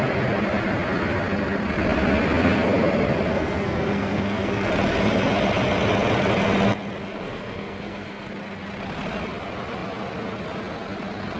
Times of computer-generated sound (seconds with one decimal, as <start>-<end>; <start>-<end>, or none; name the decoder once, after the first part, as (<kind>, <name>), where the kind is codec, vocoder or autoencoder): 3.3-4.7 (codec, SNAC); 7.0-8.3